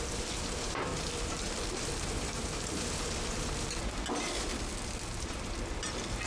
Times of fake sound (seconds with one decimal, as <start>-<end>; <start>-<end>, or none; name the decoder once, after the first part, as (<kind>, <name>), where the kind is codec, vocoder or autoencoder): 0.0-6.3 (vocoder, BigVGAN v2)